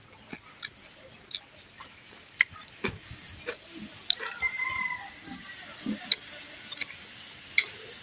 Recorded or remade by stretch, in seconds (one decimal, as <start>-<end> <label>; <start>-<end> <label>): 0.0-2.6 recorded; 2.6-6.0 remade; 6.0-8.0 recorded